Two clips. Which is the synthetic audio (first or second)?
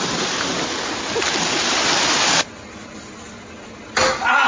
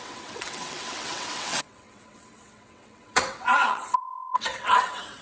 second